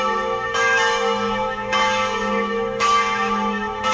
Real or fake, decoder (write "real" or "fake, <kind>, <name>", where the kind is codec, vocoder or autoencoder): fake, autoencoder, DAC-VAE